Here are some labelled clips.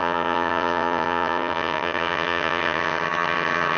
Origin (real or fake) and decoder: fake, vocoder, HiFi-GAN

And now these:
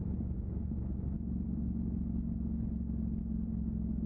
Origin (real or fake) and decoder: real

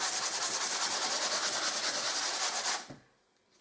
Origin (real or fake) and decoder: real